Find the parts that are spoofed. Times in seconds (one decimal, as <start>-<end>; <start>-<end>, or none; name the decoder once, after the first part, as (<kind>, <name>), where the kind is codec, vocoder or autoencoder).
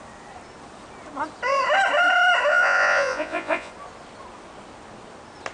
2.5-3.7 (vocoder, Vocos)